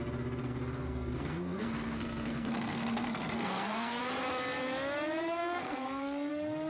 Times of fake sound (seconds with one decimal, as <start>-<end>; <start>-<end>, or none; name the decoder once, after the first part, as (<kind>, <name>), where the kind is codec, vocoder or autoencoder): 0.4-4.0 (codec, SNAC); 5.4-6.3